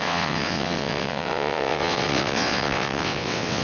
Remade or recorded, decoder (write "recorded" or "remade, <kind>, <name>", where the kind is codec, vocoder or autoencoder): remade, vocoder, WaveNeXt